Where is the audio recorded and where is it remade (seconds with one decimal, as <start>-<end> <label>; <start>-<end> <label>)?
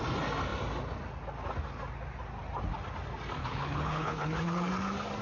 0.0-3.4 recorded; 3.4-4.7 remade; 4.7-5.2 recorded